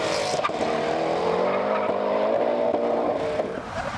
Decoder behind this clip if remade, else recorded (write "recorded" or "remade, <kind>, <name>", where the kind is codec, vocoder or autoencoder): remade, vocoder, BigVGAN v2